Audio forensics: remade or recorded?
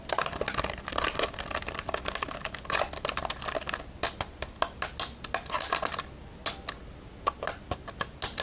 recorded